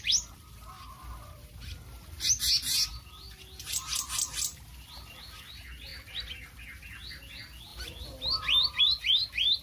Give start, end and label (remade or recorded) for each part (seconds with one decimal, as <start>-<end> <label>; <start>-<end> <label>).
0.0-9.6 recorded

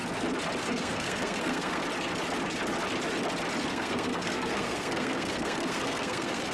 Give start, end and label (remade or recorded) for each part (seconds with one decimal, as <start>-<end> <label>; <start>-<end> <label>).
0.0-0.6 recorded; 0.6-1.8 remade; 1.8-3.7 recorded; 3.7-6.5 remade

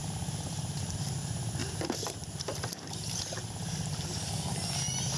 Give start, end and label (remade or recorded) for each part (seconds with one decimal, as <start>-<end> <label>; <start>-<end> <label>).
0.0-1.1 remade; 1.1-1.6 recorded; 1.6-4.3 remade; 4.3-5.2 recorded

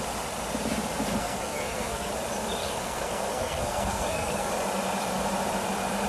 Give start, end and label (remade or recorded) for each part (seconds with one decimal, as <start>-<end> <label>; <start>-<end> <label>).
0.0-1.2 recorded; 1.2-2.1 remade; 2.1-2.6 recorded; 2.6-4.5 remade; 4.5-6.1 recorded

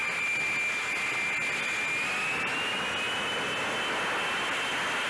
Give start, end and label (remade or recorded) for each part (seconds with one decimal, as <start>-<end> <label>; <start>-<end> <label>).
0.0-5.1 recorded

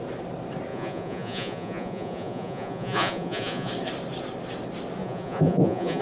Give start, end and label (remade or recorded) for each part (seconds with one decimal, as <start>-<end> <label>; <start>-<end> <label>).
0.0-0.7 recorded; 0.7-3.7 remade; 3.7-5.0 recorded; 5.0-6.0 remade

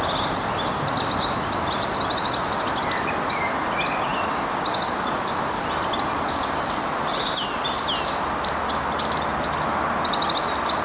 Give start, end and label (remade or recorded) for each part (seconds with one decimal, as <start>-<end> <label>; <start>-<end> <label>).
0.0-4.1 recorded; 4.1-5.2 remade; 5.2-10.8 recorded